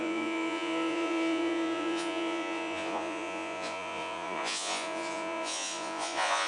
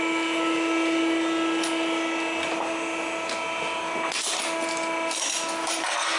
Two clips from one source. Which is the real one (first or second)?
second